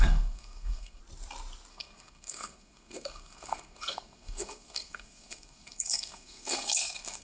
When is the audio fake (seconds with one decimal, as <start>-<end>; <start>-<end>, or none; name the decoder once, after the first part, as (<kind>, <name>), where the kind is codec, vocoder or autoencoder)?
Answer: 0.0-1.0 (codec, SNAC); 1.7-7.2